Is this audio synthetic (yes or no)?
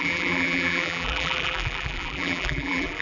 yes